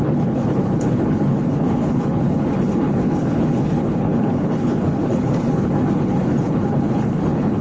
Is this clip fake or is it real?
fake